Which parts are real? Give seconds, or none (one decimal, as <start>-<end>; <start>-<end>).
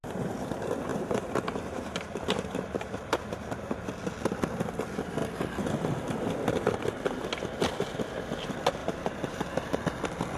0.0-0.9; 3.8-8.8; 9.8-10.4